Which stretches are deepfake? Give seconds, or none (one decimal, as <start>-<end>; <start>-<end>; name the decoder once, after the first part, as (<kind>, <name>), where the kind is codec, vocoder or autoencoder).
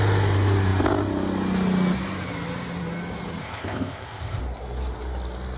3.4-4.4 (codec, ZipCodec)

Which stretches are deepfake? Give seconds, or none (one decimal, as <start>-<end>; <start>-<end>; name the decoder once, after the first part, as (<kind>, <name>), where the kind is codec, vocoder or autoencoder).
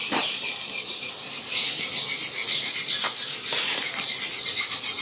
none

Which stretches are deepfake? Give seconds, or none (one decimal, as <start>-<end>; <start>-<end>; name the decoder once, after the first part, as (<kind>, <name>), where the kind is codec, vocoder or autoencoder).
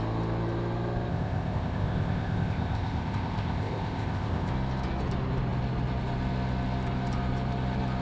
1.1-4.5 (codec, ZipCodec)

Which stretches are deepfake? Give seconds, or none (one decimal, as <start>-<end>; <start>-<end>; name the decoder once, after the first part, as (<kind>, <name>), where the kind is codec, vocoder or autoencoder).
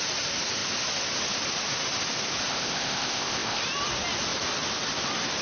2.5-3.6 (codec, ZipCodec)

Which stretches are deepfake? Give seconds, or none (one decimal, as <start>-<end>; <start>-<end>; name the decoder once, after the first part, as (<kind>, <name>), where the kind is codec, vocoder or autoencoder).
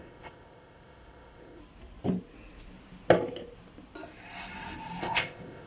0.0-1.6 (codec, ZipCodec); 5.0-5.7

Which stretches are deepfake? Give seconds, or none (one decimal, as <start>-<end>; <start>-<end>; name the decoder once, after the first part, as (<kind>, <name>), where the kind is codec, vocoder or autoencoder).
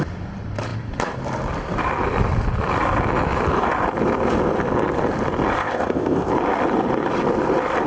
5.6-6.3 (codec, ZipCodec)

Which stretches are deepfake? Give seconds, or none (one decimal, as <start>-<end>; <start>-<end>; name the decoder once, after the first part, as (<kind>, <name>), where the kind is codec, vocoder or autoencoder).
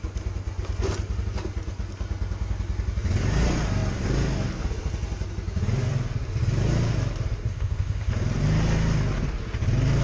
7.5-8.1 (codec, ZipCodec)